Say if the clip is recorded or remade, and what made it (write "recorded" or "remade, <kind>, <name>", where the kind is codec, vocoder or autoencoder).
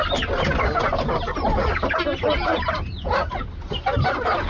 recorded